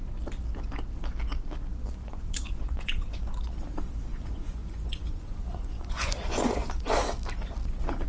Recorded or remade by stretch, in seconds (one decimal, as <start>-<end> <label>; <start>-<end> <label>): 0.0-2.0 recorded; 2.0-3.2 remade; 3.2-4.1 recorded; 4.1-6.9 remade; 6.9-8.1 recorded